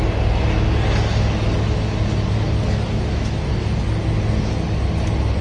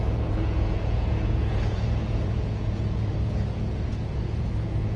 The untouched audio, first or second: first